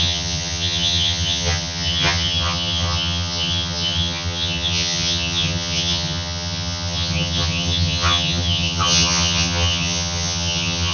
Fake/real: fake